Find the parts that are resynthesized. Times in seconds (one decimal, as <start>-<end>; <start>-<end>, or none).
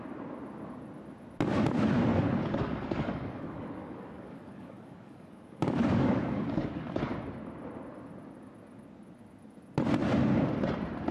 2.1-7.0